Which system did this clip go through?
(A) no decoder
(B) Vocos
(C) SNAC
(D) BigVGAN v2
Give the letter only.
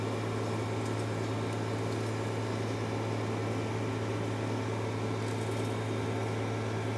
A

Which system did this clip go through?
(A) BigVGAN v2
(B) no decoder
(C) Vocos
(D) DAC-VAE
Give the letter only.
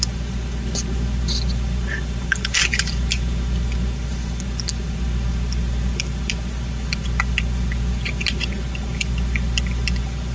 B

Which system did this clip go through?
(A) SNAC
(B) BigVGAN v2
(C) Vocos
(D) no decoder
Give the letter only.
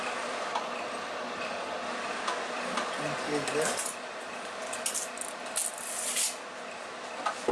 D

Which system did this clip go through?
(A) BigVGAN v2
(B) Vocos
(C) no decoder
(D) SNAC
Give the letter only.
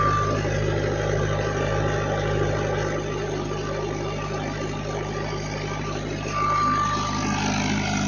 C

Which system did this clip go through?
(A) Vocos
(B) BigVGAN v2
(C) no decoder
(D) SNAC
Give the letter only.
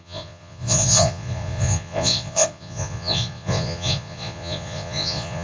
A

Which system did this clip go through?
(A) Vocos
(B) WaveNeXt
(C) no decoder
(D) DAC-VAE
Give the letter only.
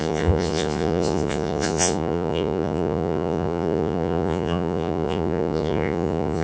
A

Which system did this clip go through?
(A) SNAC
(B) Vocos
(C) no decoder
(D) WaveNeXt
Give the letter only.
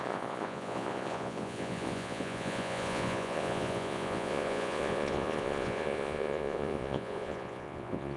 B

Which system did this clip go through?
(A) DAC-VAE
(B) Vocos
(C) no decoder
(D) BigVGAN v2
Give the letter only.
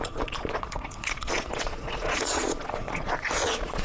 B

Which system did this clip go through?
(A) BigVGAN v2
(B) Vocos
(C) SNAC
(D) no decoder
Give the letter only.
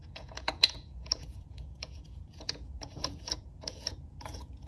B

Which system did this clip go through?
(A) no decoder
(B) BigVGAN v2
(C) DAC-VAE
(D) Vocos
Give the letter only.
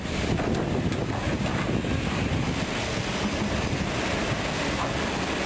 A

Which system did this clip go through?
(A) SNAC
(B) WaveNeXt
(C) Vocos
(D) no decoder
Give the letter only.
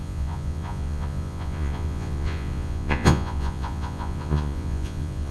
C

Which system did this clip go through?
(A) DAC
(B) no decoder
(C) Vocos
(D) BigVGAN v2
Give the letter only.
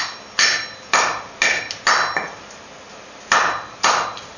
B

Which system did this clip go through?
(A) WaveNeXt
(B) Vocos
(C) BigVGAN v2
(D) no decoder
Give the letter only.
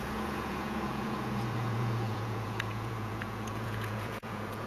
B